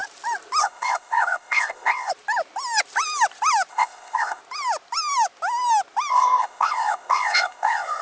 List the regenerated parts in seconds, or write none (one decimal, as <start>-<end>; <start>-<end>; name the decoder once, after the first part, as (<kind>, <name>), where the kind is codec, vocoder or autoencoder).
0.6-2.1 (codec, ZipCodec); 3.7-4.4; 6.1-8.0